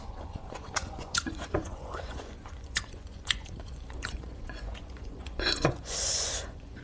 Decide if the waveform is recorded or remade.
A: remade